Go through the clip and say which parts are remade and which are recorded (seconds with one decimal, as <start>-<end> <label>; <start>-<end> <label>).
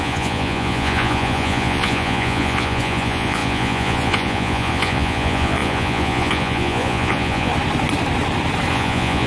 0.0-7.5 remade; 7.5-8.7 recorded; 8.7-9.3 remade